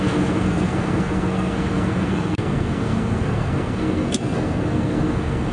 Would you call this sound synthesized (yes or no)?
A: yes